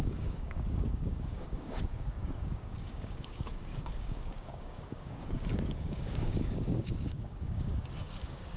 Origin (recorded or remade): remade